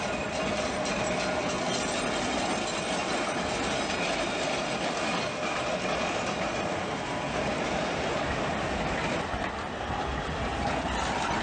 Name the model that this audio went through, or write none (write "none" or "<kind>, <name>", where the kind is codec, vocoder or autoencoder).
none